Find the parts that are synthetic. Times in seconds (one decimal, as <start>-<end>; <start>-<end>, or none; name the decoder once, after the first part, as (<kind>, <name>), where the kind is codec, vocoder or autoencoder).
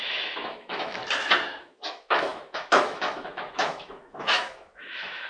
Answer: 0.0-1.0 (autoencoder, DAC-VAE); 1.6-5.3